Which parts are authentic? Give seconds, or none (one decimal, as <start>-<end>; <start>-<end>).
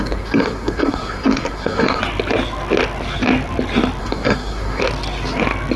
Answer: 2.0-4.0; 4.8-5.8